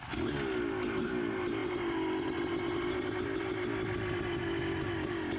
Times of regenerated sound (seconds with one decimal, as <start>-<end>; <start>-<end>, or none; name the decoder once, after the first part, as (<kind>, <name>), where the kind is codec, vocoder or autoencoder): none